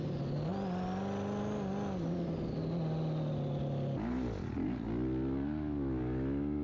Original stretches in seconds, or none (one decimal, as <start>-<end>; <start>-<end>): 0.0-6.6